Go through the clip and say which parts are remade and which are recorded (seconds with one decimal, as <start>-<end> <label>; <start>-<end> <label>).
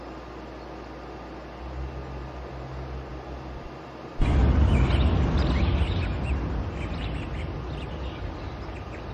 0.0-9.1 recorded